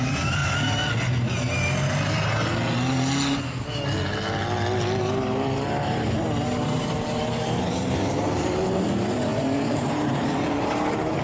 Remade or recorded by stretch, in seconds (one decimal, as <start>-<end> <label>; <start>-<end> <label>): 0.0-0.4 remade; 0.4-5.0 recorded; 5.0-11.2 remade